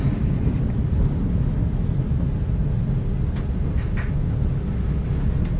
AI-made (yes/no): no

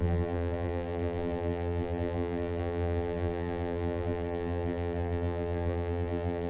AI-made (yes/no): yes